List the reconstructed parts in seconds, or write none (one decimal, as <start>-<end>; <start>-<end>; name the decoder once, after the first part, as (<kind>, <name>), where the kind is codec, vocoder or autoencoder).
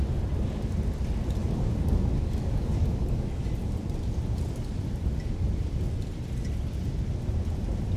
1.4-3.4 (codec, DAC)